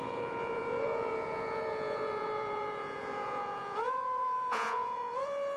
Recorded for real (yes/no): no